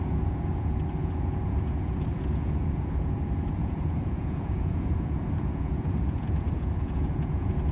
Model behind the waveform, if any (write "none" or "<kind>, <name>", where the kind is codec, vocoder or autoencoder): vocoder, Vocos